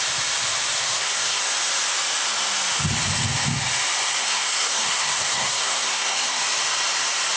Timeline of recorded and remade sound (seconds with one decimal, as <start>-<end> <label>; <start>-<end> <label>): 0.0-0.8 recorded; 0.8-1.4 remade; 1.4-4.2 recorded; 4.2-6.4 remade; 6.4-7.4 recorded